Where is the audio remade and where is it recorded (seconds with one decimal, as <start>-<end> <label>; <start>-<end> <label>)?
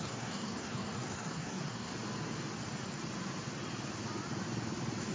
0.0-1.9 remade; 1.9-5.1 recorded